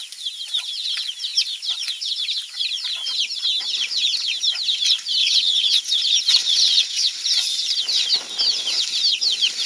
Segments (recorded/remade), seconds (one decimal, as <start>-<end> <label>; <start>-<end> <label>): 0.0-5.2 recorded; 5.2-5.8 remade; 5.8-6.4 recorded; 6.4-7.2 remade; 7.2-9.7 recorded